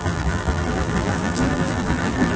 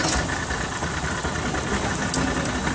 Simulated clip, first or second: first